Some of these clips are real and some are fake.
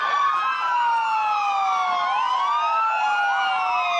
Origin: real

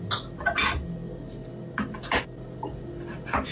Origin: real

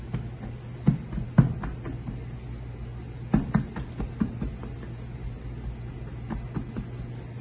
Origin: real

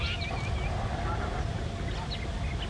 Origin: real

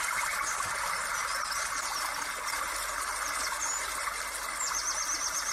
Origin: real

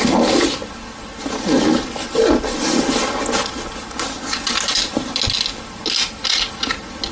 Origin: real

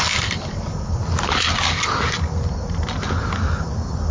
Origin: real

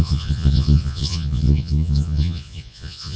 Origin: fake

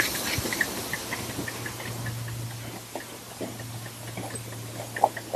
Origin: real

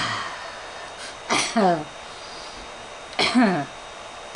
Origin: real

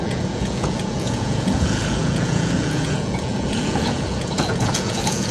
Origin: fake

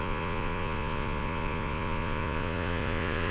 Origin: fake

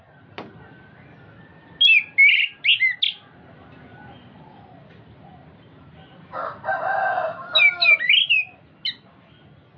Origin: real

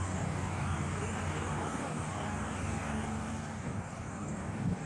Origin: fake